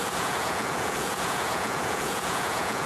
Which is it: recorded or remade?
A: remade